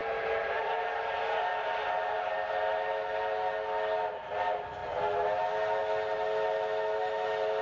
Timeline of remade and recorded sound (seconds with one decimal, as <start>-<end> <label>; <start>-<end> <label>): 0.0-7.6 recorded